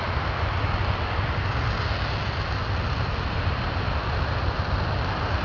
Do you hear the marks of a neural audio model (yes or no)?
no